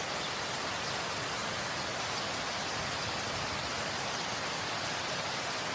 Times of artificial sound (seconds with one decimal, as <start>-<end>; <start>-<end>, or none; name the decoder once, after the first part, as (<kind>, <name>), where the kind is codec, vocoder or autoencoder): 0.0-5.7 (vocoder, BigVGAN v2)